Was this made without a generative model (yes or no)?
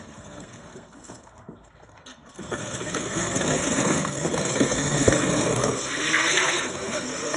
no